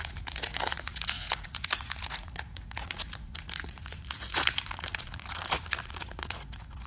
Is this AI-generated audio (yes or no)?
yes